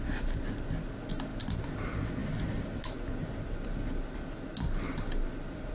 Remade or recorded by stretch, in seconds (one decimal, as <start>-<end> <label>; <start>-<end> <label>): 0.0-5.7 recorded